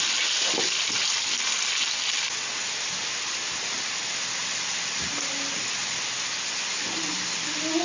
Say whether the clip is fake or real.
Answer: real